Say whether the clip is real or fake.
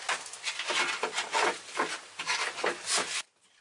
real